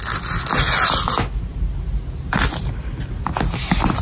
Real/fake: real